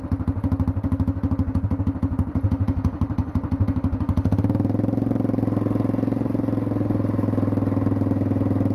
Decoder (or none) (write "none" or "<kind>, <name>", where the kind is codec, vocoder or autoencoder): none